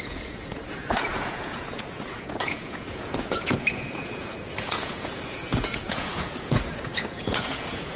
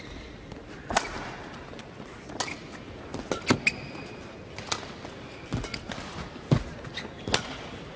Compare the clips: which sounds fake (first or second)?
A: first